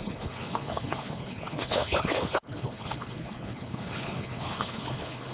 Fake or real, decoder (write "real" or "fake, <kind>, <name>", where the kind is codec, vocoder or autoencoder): fake, codec, HILCodec